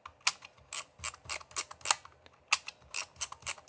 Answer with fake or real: real